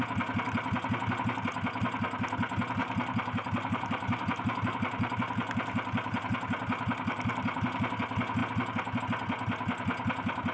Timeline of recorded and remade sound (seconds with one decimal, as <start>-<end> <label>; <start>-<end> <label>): 0.0-2.8 recorded; 2.8-6.2 remade; 6.2-10.5 recorded